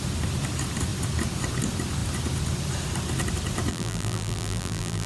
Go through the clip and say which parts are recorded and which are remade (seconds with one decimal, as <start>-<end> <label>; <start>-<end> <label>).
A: 0.0-3.7 recorded; 3.7-5.1 remade